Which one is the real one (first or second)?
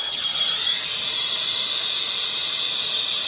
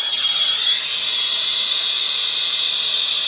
second